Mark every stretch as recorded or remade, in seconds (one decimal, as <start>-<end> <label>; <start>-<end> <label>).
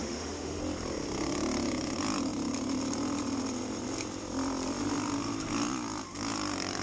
0.0-0.6 remade; 0.6-6.8 recorded